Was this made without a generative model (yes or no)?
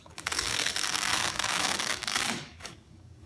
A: no